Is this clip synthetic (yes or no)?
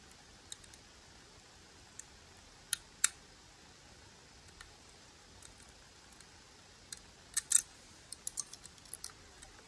no